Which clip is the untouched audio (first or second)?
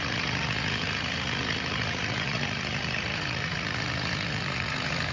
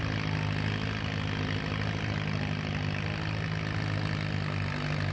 second